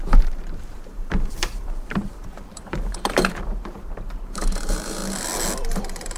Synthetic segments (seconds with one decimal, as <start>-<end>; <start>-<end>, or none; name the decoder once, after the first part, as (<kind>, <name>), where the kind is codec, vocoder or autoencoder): 0.0-5.0 (vocoder, BigVGAN v2); 5.8-6.2